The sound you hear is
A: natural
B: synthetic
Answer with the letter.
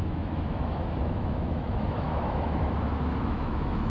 B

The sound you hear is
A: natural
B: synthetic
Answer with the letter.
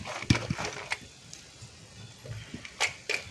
A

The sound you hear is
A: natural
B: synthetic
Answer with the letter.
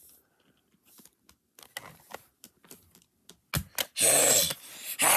A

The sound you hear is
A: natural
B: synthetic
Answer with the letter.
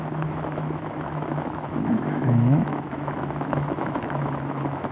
B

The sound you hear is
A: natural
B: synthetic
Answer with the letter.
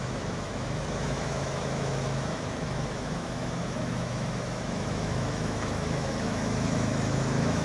B